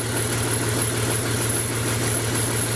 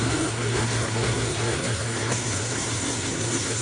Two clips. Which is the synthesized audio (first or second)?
second